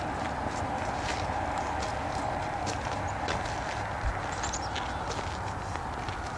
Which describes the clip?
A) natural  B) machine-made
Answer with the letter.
A